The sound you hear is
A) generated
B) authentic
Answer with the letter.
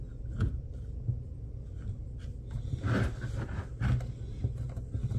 B